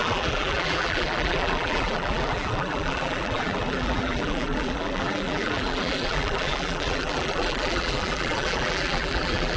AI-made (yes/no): yes